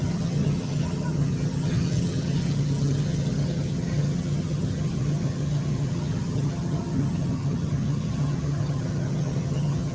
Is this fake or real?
fake